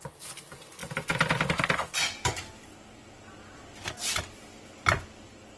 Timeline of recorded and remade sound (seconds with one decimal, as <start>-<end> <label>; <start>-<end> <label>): 0.0-5.6 recorded